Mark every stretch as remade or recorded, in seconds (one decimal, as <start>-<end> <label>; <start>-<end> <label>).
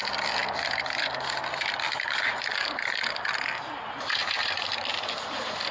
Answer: 0.0-5.7 recorded